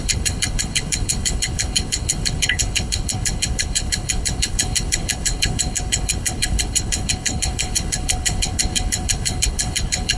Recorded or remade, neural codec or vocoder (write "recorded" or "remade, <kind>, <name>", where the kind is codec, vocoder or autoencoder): remade, codec, HILCodec